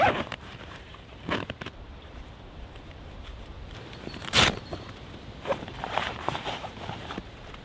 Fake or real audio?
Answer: fake